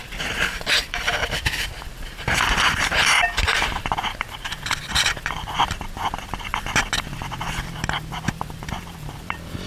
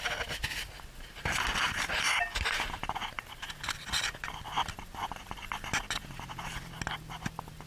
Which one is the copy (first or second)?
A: first